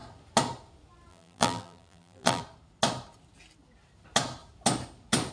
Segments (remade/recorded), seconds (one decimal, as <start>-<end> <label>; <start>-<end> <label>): 0.0-1.1 recorded; 1.1-2.4 remade; 2.4-5.3 recorded